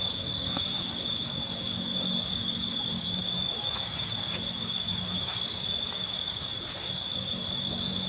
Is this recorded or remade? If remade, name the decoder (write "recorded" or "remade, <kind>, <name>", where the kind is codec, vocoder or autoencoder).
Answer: remade, codec, DAC